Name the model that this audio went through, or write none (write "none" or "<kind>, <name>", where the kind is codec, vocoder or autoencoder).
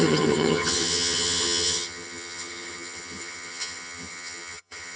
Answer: vocoder, HiFi-GAN